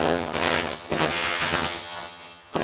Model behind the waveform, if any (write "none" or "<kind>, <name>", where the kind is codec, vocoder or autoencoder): vocoder, HiFi-GAN